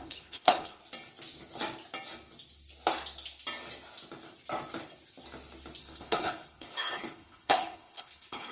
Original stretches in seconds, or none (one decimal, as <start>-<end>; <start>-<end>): 0.8-5.8